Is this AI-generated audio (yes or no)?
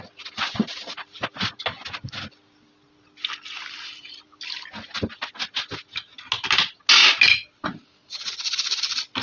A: no